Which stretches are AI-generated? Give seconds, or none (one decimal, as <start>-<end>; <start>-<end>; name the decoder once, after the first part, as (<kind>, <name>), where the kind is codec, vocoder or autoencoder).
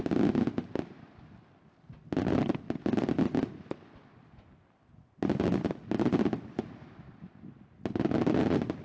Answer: none